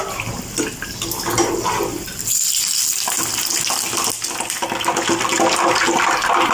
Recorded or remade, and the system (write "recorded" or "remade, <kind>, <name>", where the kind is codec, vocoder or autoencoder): recorded